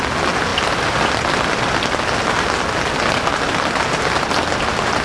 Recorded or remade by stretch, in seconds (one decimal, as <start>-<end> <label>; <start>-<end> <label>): 0.0-5.0 recorded